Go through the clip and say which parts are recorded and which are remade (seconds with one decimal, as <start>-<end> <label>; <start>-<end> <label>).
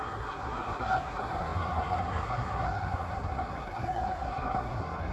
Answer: 0.0-5.1 remade